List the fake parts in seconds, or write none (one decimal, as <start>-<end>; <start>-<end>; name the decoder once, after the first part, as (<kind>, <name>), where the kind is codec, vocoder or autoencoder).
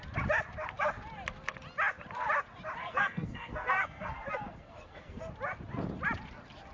2.8-5.2 (codec, SNAC)